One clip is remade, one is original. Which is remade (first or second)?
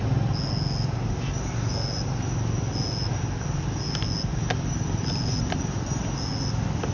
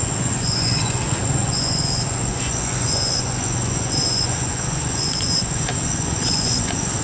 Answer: second